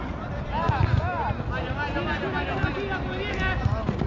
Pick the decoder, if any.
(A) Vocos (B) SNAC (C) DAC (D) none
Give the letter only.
D